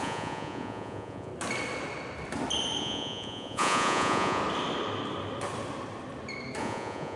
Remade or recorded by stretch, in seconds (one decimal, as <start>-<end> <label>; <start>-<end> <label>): 0.0-1.3 remade; 1.3-2.8 recorded; 2.8-4.4 remade; 4.4-6.6 recorded; 6.6-7.2 remade